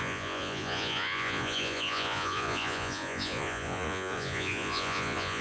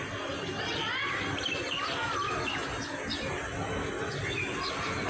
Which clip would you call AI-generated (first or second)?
first